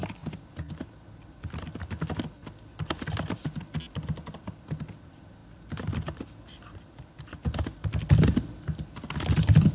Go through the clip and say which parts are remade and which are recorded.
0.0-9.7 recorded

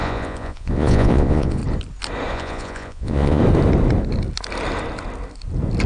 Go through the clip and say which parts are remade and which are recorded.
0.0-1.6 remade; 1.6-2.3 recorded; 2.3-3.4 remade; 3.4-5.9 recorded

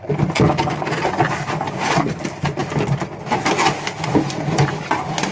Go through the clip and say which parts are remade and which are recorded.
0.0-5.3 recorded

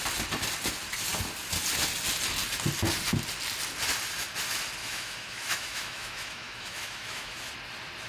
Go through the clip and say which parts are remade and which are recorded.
0.0-4.8 recorded; 4.8-7.5 remade; 7.5-8.1 recorded

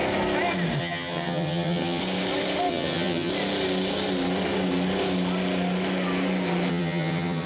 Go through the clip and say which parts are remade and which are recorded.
0.0-0.8 recorded; 0.8-2.0 remade; 2.0-2.7 recorded; 2.7-3.3 remade; 3.3-6.7 recorded; 6.7-7.5 remade

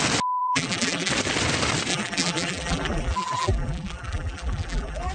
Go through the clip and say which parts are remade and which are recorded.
0.0-0.4 recorded; 0.4-1.1 remade; 1.1-1.9 recorded; 1.9-5.1 remade

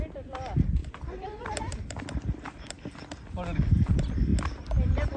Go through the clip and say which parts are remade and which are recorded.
0.0-0.8 recorded; 0.8-3.9 remade; 3.9-5.2 recorded